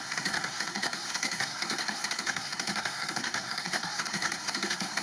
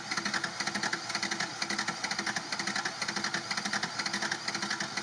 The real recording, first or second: second